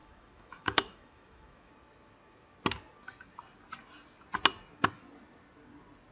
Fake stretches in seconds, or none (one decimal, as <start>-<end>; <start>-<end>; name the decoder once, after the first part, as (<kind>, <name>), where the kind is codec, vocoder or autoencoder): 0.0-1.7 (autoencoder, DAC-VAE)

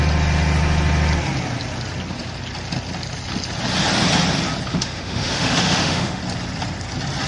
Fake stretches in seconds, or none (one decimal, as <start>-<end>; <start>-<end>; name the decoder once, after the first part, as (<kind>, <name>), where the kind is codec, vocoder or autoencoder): 4.7-6.2 (autoencoder, DAC-VAE)

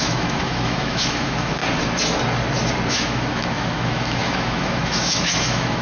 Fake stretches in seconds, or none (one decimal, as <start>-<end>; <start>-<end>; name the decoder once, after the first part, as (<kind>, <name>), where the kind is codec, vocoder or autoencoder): 0.0-1.6 (autoencoder, DAC-VAE); 2.9-5.8

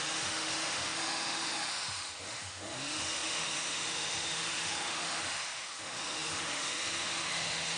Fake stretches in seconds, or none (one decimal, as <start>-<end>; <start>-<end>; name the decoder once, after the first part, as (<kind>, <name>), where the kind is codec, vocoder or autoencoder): 0.0-7.8 (autoencoder, DAC-VAE)

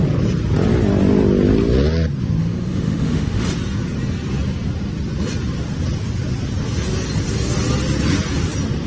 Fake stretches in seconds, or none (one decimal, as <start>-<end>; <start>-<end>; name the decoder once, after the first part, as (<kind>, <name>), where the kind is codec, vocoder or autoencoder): 2.4-3.5 (autoencoder, DAC-VAE)